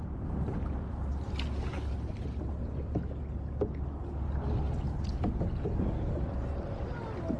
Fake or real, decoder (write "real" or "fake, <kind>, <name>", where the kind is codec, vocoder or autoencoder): real